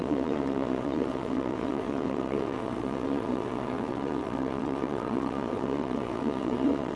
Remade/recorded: remade